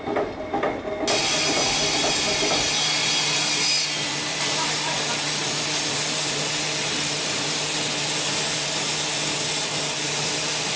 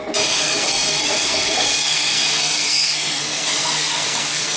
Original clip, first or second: first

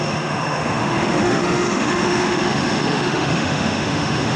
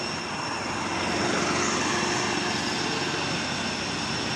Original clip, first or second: second